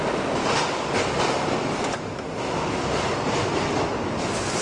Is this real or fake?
real